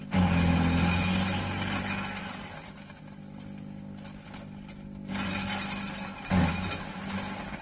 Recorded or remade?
recorded